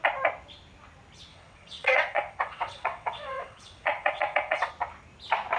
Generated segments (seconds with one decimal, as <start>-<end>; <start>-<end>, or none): 1.3-4.7